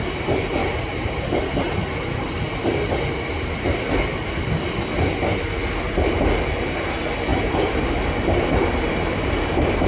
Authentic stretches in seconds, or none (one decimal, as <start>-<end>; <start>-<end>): 0.0-0.6; 2.4-7.3